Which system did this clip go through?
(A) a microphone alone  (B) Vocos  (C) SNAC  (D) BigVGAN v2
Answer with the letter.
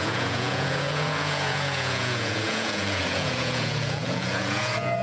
B